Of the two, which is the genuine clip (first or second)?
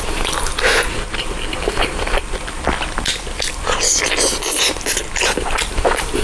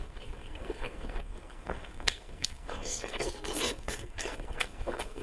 first